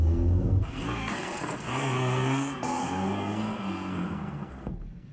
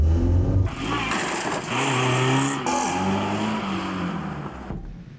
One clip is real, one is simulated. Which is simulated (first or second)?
first